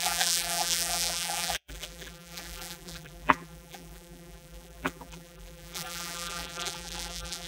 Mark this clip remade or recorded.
remade